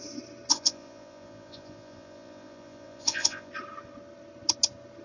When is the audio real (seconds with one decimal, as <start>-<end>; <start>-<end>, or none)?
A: 0.0-0.5; 3.5-5.0